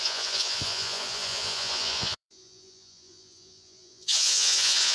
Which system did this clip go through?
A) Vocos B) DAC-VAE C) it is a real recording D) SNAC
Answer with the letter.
A